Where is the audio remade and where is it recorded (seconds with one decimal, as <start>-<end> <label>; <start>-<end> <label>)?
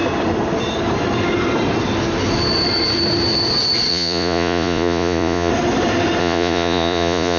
0.0-3.9 recorded; 3.9-5.5 remade; 5.5-6.2 recorded; 6.2-7.4 remade